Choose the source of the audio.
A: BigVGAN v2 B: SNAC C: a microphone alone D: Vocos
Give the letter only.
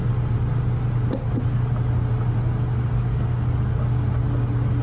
C